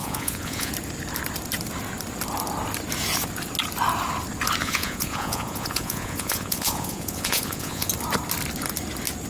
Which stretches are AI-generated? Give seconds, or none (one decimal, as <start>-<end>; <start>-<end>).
0.0-0.7; 4.6-7.9